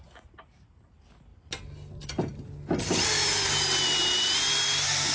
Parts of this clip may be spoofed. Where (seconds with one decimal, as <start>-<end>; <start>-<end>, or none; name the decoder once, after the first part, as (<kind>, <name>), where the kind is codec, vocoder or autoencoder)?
none